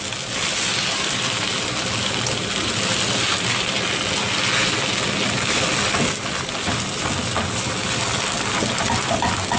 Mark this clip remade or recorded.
recorded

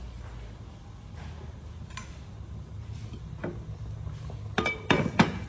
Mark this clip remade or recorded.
recorded